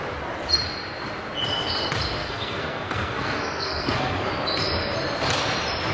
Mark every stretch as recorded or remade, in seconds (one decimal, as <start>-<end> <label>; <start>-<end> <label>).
0.0-2.2 recorded; 2.2-4.3 remade; 4.3-5.9 recorded